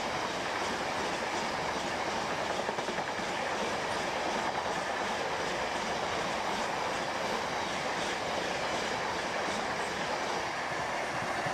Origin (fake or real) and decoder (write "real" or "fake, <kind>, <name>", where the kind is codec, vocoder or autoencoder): real